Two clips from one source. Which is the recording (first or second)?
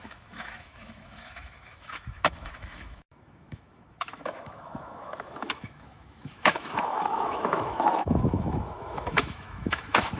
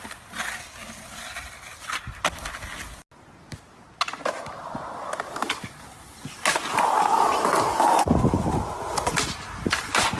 second